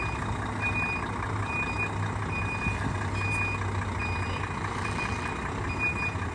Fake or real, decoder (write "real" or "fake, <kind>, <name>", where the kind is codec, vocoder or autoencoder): real